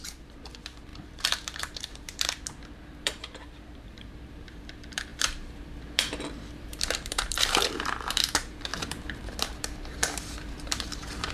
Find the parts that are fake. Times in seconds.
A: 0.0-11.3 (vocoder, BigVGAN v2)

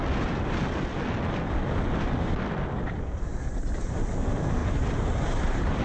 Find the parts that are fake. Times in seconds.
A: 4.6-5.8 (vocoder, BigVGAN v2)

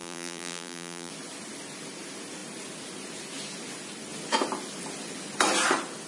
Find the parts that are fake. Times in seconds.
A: 0.0-1.1 (vocoder, BigVGAN v2)